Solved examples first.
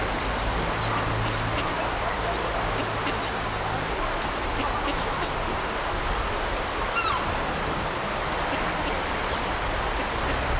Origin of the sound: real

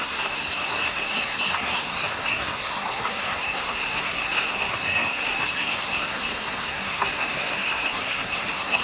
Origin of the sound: fake